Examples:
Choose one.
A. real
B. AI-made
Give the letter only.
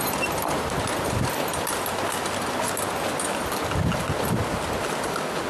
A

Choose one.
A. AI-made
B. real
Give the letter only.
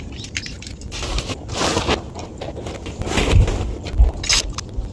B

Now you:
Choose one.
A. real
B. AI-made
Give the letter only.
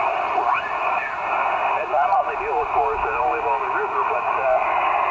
A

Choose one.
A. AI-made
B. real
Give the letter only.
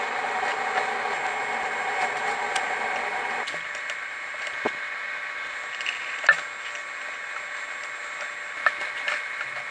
B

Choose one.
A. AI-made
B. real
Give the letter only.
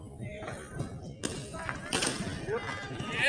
B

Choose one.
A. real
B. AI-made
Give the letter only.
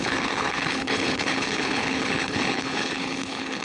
B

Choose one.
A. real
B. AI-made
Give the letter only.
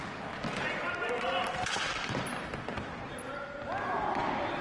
A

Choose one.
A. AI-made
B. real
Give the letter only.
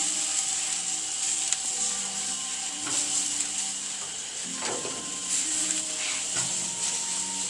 B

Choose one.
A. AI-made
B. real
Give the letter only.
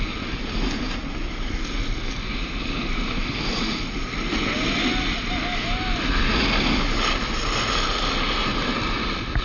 B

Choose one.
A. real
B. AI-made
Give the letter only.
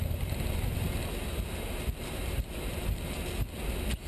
A